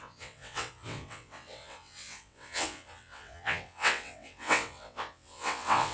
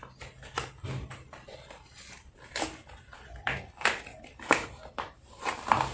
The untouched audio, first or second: second